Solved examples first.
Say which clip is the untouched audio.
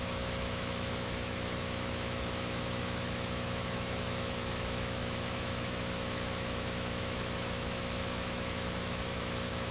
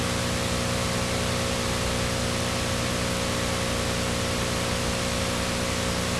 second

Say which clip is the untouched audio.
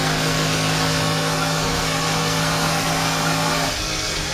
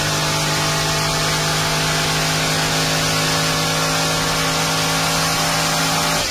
second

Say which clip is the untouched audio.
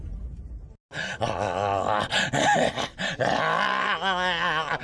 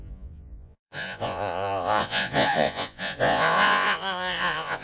first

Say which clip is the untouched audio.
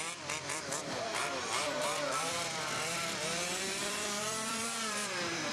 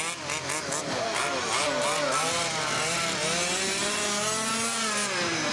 second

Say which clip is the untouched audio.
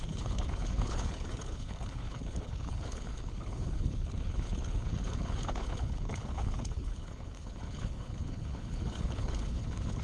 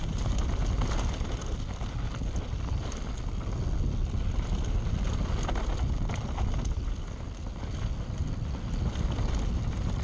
second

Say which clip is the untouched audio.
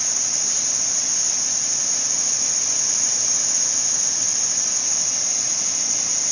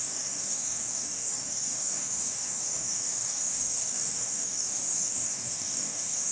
first